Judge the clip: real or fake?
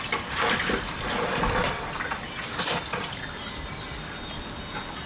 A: real